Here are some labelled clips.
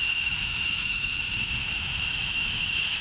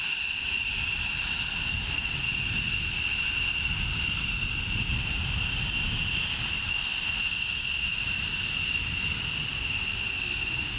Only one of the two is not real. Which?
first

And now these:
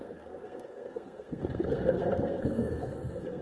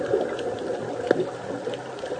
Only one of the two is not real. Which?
first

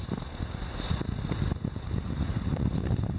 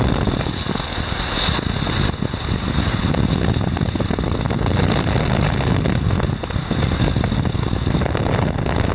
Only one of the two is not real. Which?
first